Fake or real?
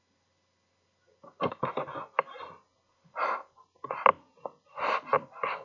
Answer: real